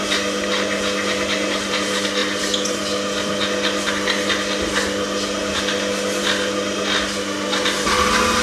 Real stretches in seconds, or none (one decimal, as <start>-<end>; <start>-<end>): 0.0-8.4